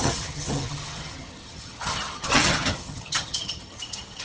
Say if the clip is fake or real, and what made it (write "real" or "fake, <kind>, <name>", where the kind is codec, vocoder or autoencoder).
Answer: fake, vocoder, HiFi-GAN